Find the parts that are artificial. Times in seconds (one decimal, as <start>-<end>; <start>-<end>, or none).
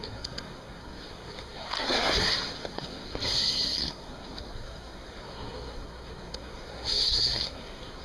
0.0-8.0